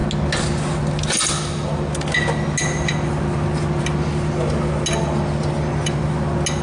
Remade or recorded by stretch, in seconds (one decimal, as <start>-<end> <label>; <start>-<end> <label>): 0.0-6.6 recorded